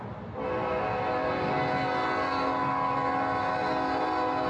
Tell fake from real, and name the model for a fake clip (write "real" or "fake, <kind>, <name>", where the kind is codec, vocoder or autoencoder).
real